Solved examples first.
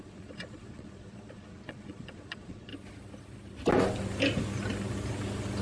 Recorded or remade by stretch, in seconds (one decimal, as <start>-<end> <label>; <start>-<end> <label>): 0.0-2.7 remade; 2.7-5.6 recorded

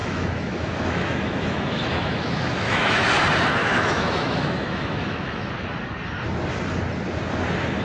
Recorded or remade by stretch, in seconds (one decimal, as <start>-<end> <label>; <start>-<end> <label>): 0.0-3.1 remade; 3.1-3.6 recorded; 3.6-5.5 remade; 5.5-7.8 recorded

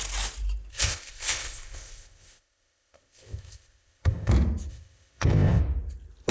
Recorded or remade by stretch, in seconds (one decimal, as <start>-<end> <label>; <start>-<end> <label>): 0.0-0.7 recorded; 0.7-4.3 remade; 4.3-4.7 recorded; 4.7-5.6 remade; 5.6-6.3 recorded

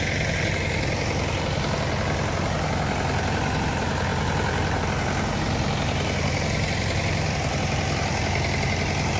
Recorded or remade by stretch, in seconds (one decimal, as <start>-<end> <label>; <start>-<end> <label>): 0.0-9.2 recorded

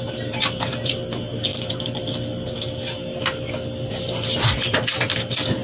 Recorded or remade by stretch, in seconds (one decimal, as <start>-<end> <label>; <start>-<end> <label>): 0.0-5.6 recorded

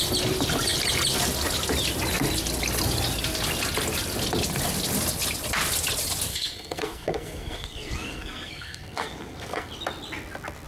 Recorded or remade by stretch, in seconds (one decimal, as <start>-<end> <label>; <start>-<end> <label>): 0.0-6.3 recorded; 6.3-9.7 remade; 9.7-10.7 recorded